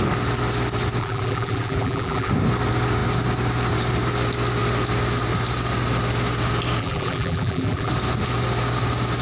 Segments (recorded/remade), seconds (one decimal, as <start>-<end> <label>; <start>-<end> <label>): 0.0-1.0 recorded; 1.0-2.3 remade; 2.3-6.8 recorded; 6.8-7.9 remade; 7.9-9.2 recorded